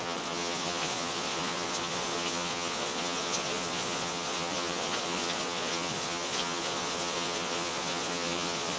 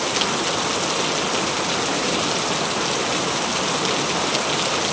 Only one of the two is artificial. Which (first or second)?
first